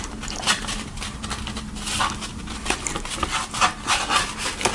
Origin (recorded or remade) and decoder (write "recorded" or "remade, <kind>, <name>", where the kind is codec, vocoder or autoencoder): recorded